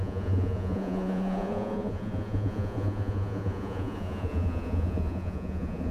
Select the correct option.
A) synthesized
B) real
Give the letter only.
A